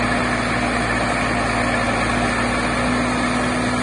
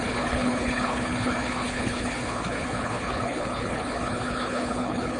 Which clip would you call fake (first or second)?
second